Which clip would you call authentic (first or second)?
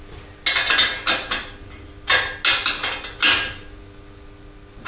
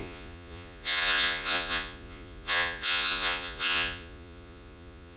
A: first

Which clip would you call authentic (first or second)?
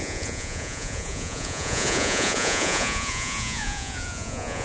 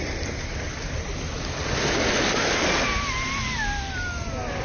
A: second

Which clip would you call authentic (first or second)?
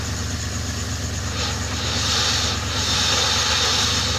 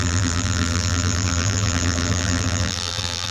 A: first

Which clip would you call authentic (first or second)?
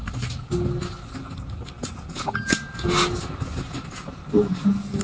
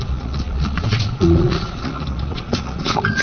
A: first